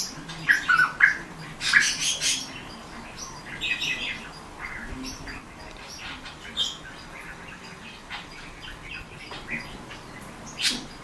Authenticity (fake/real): real